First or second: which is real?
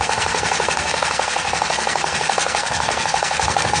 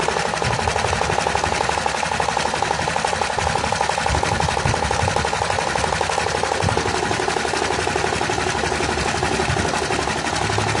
second